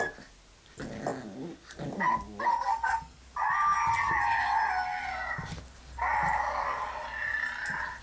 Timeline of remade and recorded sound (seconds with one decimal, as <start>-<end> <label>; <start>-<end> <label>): 0.0-2.5 recorded; 2.5-3.2 remade; 3.2-8.0 recorded